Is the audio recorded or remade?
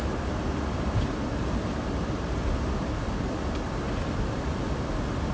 recorded